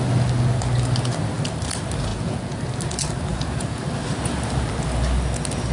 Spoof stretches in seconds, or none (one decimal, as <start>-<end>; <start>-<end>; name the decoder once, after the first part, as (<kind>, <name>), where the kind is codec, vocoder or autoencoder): 2.1-2.6 (vocoder, Vocos); 3.3-3.8

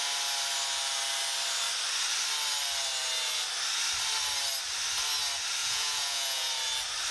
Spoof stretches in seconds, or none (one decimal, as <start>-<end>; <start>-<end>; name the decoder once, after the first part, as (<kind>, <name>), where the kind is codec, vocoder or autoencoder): 5.6-6.5 (vocoder, Vocos)

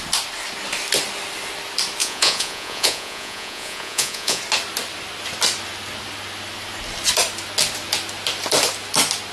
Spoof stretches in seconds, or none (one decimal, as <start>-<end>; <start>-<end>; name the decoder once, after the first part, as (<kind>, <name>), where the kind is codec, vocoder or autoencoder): 2.0-4.4 (vocoder, Vocos)

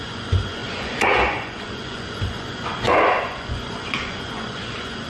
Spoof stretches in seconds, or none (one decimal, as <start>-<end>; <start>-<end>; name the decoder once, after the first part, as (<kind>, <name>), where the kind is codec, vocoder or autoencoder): 0.0-5.1 (vocoder, Vocos)